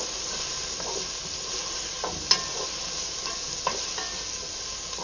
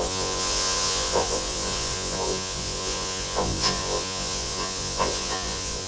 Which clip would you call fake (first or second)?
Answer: second